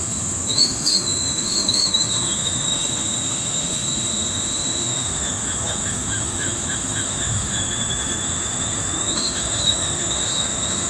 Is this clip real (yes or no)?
no